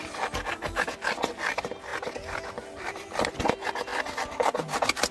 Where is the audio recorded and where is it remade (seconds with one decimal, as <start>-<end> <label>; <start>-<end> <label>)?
0.0-5.1 recorded